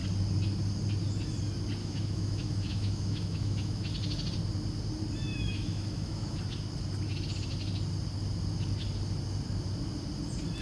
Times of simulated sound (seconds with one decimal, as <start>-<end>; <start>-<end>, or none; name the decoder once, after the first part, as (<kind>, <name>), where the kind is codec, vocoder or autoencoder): 1.8-3.9 (autoencoder, DAC-VAE); 5.3-6.4